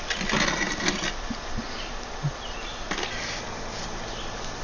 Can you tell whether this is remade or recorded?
recorded